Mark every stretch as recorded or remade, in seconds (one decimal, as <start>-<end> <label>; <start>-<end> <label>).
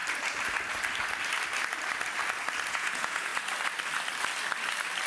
0.0-2.7 recorded; 2.7-3.3 remade; 3.3-5.1 recorded